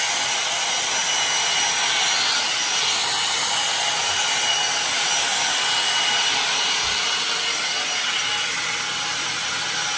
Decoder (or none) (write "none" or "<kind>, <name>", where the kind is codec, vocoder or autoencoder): none